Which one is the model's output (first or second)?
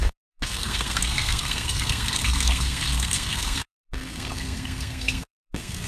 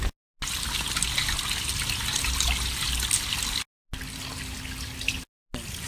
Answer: first